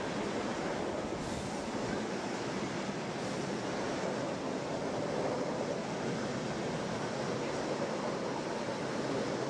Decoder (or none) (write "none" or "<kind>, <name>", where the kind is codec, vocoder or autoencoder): none